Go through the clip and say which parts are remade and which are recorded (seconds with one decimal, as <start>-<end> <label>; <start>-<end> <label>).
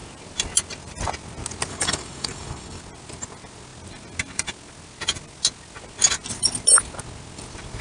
0.0-1.7 recorded; 1.7-2.8 remade; 2.8-7.8 recorded